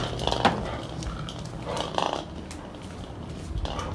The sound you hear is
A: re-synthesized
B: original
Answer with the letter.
B